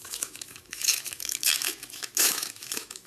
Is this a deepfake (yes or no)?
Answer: yes